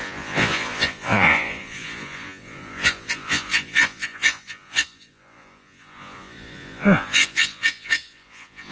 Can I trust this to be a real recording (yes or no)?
no